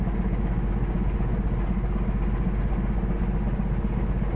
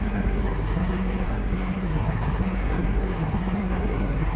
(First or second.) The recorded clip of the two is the first